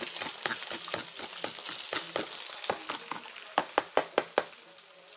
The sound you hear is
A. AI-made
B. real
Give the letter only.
B